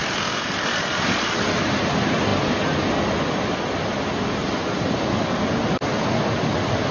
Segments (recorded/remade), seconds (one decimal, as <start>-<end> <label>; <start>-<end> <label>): 0.0-6.9 recorded